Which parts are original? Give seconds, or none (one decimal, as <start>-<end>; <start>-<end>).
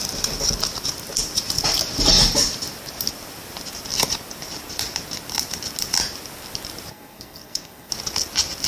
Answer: 0.0-6.9; 7.9-8.7